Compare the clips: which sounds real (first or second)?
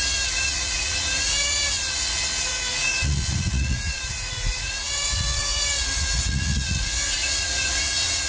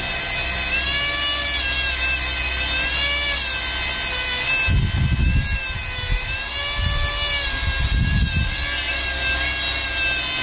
second